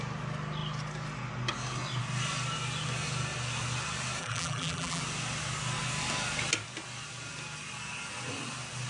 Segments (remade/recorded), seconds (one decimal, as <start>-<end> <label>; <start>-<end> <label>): 0.0-4.2 recorded; 4.2-5.0 remade; 5.0-8.9 recorded